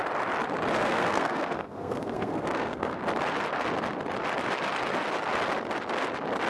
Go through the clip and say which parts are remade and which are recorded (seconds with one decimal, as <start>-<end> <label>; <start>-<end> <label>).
0.0-0.8 recorded; 0.8-3.0 remade; 3.0-6.5 recorded